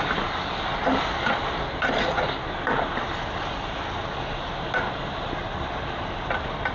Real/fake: real